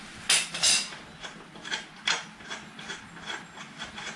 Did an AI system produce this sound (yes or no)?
no